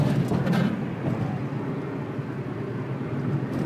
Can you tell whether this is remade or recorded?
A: recorded